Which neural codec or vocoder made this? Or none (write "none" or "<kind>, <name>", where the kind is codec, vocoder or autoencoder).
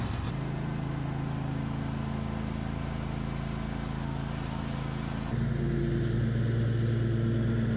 none